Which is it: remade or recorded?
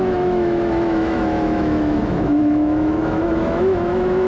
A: remade